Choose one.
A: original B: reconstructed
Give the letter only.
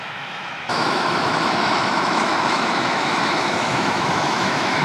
B